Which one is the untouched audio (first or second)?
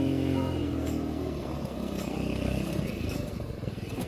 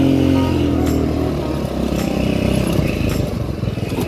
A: second